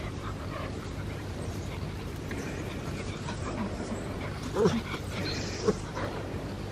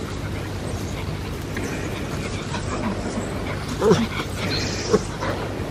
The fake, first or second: first